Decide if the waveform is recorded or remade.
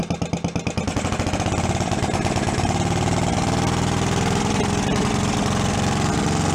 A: recorded